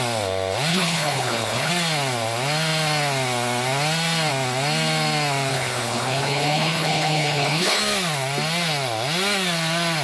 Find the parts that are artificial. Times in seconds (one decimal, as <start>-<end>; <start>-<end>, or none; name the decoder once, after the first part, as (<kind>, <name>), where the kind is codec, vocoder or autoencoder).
0.7-1.7 (codec, HILCodec); 5.5-7.8

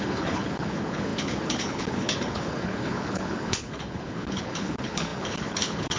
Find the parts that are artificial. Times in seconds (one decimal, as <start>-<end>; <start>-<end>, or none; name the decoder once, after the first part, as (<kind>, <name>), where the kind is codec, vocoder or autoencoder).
0.0-6.0 (codec, HILCodec)

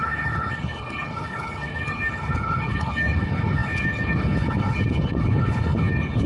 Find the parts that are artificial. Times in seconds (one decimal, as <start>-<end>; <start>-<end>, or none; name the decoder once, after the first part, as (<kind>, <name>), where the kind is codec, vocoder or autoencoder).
0.0-6.3 (codec, HILCodec)

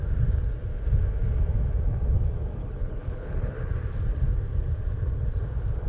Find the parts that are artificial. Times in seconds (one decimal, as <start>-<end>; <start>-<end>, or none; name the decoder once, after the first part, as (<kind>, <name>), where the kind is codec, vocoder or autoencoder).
2.6-3.7 (codec, HILCodec)

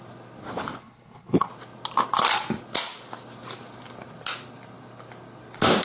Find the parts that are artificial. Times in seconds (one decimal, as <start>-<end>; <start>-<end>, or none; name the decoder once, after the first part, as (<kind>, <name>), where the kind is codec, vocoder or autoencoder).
0.8-1.5 (codec, HILCodec)